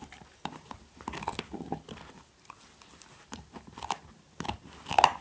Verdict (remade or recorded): recorded